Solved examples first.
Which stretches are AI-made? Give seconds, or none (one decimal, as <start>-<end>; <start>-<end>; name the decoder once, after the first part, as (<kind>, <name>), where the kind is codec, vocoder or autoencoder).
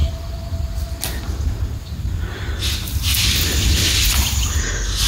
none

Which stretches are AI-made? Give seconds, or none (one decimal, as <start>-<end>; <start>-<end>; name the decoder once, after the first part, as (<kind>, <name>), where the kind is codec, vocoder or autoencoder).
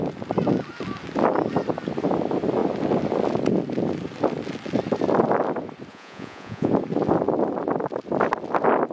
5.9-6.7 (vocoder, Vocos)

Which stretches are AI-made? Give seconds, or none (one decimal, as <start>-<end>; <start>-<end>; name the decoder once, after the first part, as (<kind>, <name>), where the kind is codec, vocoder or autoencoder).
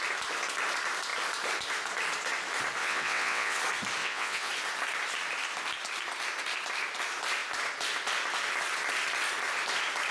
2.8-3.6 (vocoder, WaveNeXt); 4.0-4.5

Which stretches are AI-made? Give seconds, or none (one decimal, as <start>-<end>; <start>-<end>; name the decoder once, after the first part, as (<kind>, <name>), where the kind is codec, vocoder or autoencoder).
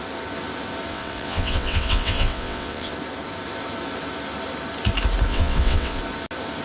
0.9-2.9 (vocoder, WaveNeXt); 5.3-6.0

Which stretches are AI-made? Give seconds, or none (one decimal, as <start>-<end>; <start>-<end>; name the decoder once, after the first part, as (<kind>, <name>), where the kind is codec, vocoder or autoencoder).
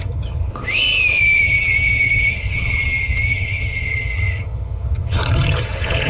0.0-0.5 (vocoder, HiFi-GAN); 1.2-6.1